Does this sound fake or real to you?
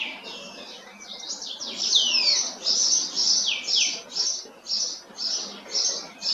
real